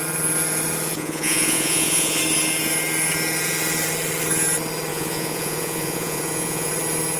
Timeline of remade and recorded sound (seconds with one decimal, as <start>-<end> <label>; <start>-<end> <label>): 0.0-0.9 recorded; 0.9-2.2 remade; 2.2-4.9 recorded; 4.9-6.7 remade; 6.7-7.2 recorded